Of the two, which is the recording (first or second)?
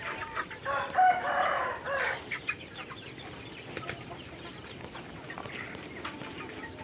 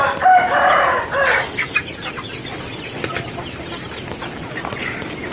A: second